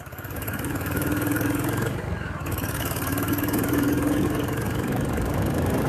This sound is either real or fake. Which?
fake